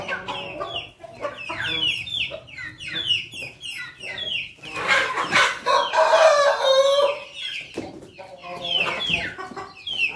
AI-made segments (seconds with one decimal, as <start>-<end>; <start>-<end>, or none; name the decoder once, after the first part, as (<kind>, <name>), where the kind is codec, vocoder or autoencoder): none